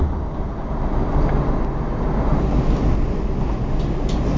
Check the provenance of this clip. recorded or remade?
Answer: recorded